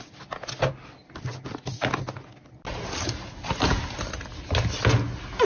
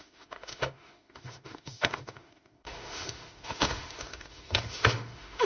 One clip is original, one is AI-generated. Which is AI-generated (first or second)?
second